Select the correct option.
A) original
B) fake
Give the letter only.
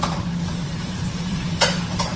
B